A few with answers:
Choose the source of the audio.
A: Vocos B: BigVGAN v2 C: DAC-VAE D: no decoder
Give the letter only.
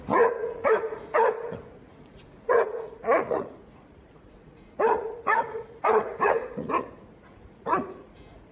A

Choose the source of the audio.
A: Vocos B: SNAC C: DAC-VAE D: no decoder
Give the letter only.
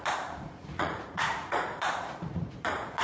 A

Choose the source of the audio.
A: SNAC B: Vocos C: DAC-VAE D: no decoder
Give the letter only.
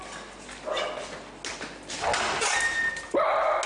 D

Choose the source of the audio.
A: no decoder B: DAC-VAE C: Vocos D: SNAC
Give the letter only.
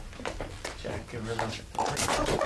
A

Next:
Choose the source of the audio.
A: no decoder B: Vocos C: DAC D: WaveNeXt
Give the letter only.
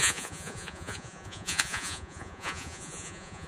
B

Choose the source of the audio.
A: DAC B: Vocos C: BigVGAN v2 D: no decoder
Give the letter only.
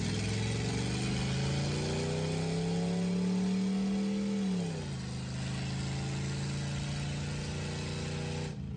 D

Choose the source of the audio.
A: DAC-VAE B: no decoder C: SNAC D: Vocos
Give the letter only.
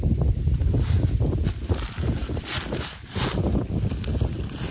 B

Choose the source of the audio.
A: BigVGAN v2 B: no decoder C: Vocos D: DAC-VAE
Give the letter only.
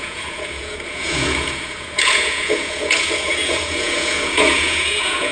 C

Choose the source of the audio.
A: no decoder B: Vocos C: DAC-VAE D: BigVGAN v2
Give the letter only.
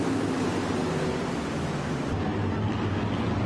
A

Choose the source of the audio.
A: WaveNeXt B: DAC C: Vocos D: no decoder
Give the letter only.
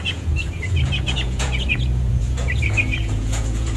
C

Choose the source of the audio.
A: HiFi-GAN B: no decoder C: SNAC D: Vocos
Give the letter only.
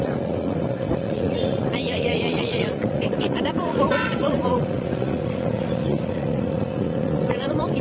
D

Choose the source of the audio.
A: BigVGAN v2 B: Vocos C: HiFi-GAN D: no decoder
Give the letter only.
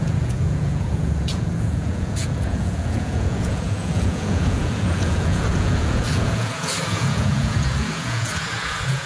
B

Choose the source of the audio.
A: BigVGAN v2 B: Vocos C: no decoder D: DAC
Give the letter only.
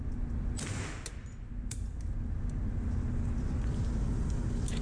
C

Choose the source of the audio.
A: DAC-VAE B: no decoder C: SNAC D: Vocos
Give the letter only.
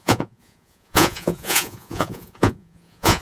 D